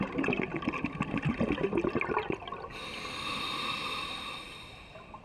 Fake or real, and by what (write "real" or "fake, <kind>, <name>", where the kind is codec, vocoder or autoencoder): real